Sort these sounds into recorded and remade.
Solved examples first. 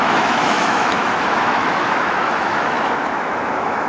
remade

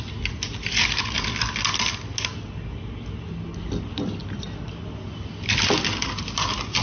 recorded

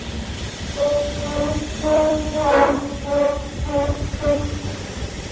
remade